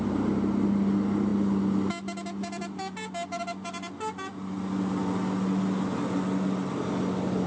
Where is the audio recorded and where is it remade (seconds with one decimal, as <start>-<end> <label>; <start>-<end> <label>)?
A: 0.0-7.5 recorded